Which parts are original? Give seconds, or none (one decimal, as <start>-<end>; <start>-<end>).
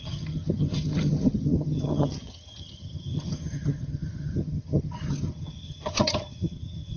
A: none